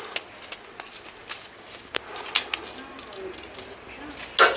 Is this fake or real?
real